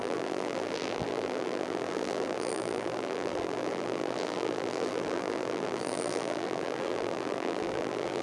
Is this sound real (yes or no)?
no